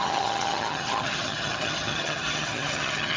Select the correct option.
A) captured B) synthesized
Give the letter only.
B